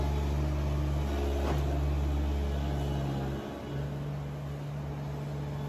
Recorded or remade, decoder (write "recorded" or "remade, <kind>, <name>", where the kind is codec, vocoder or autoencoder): recorded